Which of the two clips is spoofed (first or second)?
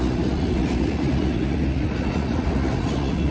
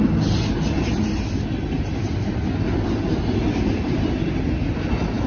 first